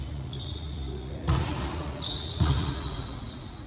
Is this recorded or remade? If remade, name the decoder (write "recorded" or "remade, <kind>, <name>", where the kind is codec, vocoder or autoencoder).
remade, vocoder, Vocos